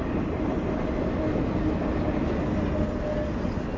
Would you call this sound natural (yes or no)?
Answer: yes